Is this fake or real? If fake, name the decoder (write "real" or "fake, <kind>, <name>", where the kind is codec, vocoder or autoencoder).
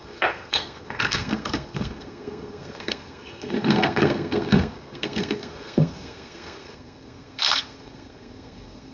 fake, codec, SNAC